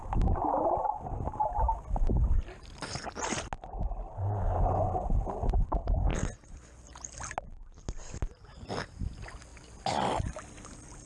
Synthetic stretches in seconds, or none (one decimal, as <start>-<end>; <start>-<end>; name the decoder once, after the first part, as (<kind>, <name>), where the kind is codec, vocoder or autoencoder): none

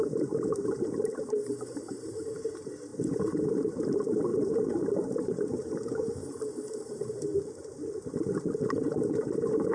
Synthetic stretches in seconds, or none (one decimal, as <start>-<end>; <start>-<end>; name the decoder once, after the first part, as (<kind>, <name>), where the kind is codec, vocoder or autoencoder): 0.0-6.2 (vocoder, BigVGAN v2); 6.7-7.3; 8.7-9.7

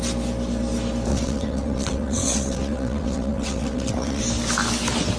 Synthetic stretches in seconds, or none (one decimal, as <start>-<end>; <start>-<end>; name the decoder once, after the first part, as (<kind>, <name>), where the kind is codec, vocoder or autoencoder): 1.1-4.2 (vocoder, WaveNeXt)

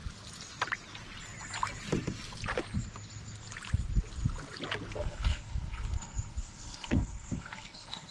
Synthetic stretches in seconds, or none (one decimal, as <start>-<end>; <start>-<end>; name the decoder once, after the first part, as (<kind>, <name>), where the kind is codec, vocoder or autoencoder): 5.0-8.1 (codec, SNAC)